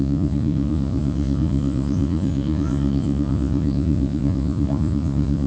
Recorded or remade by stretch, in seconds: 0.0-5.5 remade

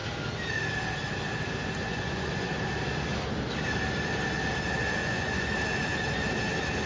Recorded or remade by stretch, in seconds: 0.0-1.9 recorded; 1.9-2.5 remade; 2.5-5.0 recorded; 5.0-5.5 remade; 5.5-6.9 recorded

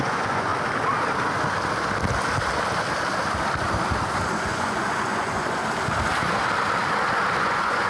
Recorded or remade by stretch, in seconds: 0.0-0.5 remade; 0.5-4.4 recorded; 4.4-5.6 remade; 5.6-7.4 recorded; 7.4-7.9 remade